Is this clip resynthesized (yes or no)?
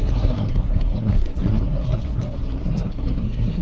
yes